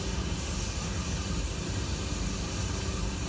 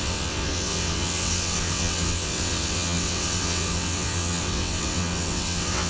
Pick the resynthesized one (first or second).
second